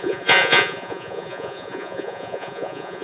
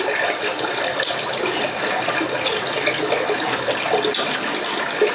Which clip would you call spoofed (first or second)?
first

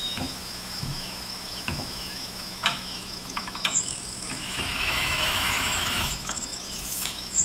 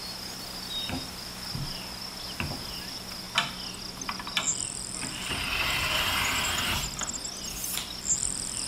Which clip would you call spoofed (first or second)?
first